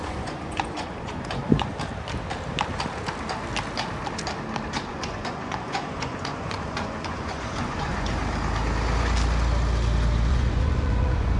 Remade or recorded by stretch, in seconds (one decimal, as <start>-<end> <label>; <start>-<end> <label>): 0.0-1.7 remade; 1.7-4.9 recorded; 4.9-8.2 remade; 8.2-10.3 recorded; 10.3-11.4 remade